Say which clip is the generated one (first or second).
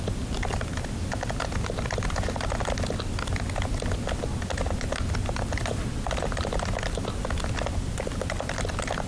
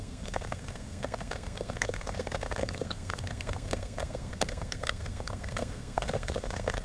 second